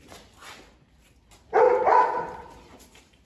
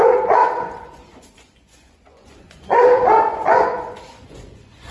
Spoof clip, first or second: second